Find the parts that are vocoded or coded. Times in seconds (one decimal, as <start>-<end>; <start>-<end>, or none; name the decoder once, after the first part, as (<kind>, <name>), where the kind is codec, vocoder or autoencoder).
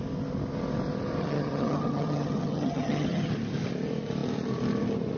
1.2-3.3 (vocoder, HiFi-GAN)